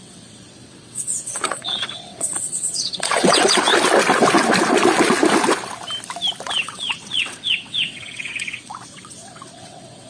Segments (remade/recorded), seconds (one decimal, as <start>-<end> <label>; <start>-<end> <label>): 0.0-3.7 remade; 3.7-6.5 recorded; 6.5-10.1 remade